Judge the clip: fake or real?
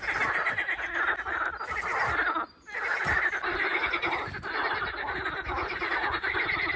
real